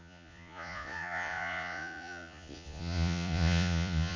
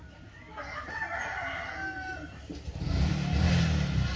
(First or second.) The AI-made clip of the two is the first